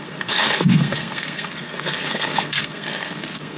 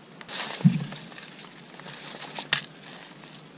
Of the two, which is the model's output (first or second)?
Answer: first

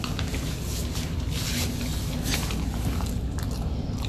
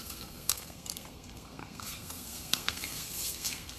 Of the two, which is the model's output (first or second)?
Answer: second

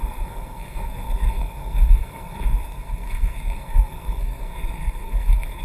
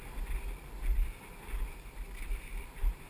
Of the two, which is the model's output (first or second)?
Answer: first